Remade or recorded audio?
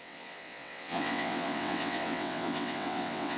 remade